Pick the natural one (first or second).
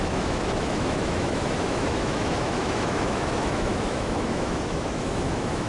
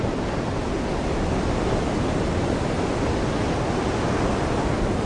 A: second